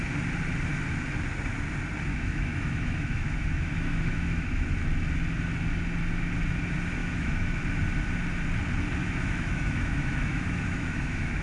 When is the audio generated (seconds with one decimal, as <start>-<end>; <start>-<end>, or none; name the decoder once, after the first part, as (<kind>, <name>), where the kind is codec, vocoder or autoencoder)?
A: 2.1-4.7 (autoencoder, DAC-VAE); 7.0-7.6; 9.0-11.4